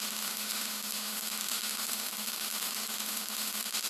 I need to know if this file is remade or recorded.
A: remade